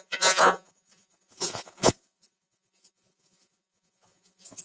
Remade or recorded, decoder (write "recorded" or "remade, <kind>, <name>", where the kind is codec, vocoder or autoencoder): remade, vocoder, Vocos